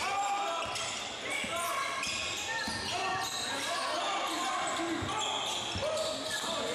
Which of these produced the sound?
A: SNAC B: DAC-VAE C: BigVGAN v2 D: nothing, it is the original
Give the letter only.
D